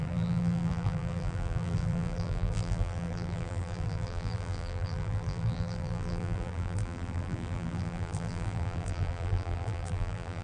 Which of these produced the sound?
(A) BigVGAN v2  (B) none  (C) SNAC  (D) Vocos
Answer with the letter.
A